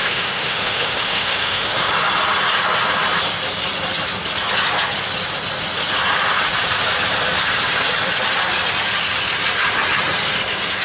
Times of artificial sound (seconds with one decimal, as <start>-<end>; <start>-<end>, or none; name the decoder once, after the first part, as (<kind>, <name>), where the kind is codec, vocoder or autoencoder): 0.0-1.9 (autoencoder, DAC-VAE)